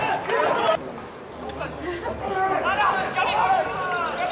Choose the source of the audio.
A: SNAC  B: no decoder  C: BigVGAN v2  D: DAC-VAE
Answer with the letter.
B